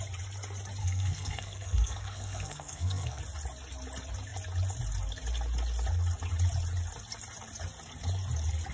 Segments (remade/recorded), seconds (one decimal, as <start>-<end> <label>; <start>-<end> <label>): 0.0-0.8 recorded; 0.8-3.2 remade; 3.2-8.7 recorded